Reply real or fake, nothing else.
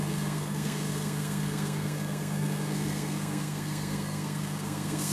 fake